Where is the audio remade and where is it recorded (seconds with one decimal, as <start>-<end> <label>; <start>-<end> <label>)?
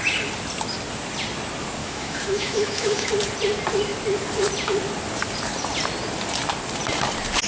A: 0.0-1.8 recorded; 1.8-3.1 remade; 3.1-7.5 recorded